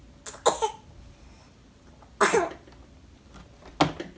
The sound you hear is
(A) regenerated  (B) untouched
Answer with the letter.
B